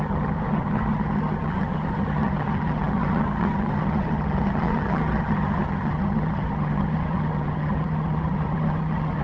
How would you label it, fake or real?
fake